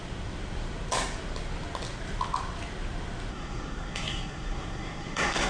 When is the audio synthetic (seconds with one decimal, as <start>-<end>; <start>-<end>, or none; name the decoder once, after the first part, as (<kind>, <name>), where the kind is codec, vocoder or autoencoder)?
3.3-5.5 (codec, SNAC)